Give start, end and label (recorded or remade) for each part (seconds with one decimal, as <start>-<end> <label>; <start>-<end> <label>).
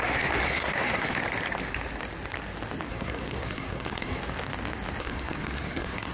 0.0-1.2 remade; 1.2-2.9 recorded; 2.9-4.2 remade; 4.2-5.0 recorded; 5.0-6.1 remade